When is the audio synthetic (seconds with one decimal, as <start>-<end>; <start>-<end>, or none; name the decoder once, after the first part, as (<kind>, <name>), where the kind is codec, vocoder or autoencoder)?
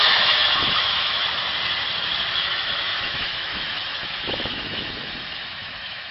0.0-1.2 (autoencoder, DAC-VAE); 2.3-6.1